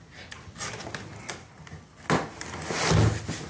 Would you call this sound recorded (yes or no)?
yes